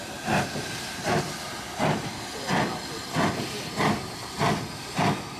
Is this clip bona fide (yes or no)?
yes